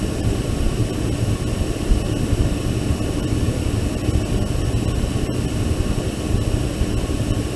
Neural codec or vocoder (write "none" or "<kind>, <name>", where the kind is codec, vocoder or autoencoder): none